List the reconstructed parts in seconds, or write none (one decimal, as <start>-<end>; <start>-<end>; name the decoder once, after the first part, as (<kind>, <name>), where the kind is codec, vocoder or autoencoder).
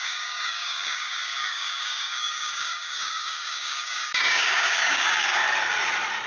0.0-5.4 (codec, DAC)